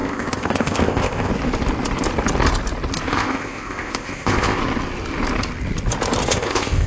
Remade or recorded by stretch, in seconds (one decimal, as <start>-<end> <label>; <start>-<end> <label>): 0.0-1.3 remade; 1.3-3.1 recorded; 3.1-4.6 remade; 4.6-6.3 recorded; 6.3-6.9 remade